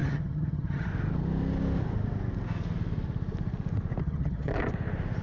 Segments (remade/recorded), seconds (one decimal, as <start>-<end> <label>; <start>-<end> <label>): 0.0-0.9 remade; 0.9-4.0 recorded; 4.0-4.5 remade; 4.5-5.2 recorded